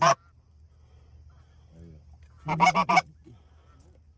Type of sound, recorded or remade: recorded